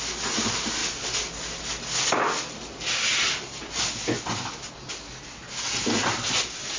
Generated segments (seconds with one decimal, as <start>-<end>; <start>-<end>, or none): none